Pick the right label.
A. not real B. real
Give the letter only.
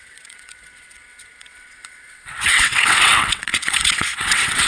A